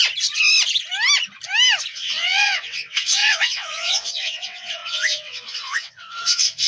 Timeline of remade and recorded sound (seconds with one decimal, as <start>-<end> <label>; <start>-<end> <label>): 0.0-1.9 recorded; 1.9-6.7 remade